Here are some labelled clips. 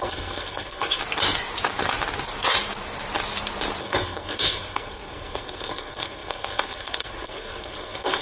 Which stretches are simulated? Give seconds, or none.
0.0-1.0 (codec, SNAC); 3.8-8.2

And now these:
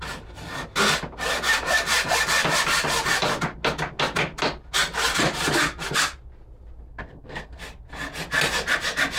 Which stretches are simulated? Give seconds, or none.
6.9-7.6 (codec, SNAC)

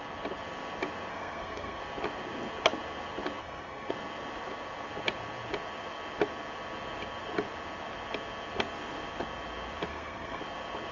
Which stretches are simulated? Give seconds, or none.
1.1-1.8 (codec, SNAC); 3.4-3.9; 9.9-10.4

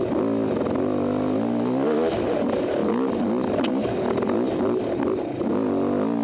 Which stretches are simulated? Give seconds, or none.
none

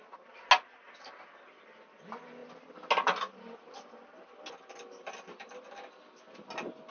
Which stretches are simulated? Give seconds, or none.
none